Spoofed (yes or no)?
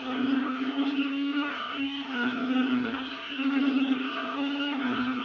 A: yes